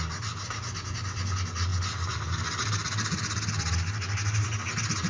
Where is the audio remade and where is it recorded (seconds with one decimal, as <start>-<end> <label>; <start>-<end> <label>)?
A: 0.0-5.1 recorded